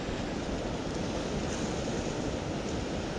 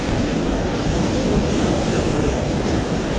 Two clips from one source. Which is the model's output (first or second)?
second